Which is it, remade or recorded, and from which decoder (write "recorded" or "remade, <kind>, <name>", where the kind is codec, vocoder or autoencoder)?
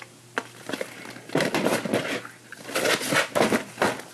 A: recorded